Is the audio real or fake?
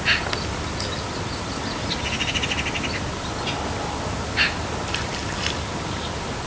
real